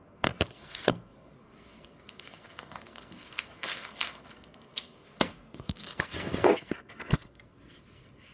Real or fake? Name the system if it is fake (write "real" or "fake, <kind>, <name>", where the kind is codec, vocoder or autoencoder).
fake, codec, SNAC